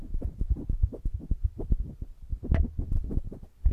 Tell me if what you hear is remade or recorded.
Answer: recorded